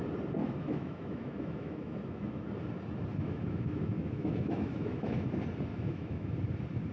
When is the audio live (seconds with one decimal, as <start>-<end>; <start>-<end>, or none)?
0.0-0.4; 2.5-3.1; 5.3-5.7; 6.3-6.9